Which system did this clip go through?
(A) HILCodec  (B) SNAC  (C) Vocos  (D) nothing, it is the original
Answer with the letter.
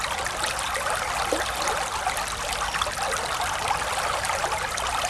D